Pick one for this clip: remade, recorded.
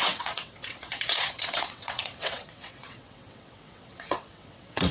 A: remade